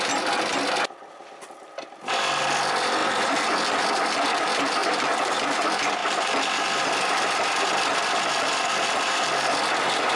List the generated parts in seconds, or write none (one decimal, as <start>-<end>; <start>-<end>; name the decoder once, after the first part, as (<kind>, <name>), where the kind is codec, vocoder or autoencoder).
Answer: 3.0-3.5 (vocoder, BigVGAN v2)